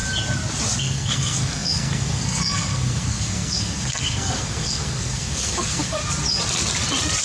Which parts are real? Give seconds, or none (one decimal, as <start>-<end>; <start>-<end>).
0.0-0.8; 6.0-7.2